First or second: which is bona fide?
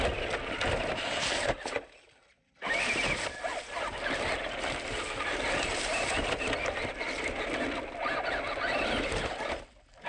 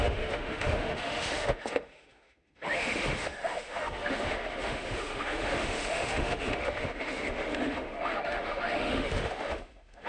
first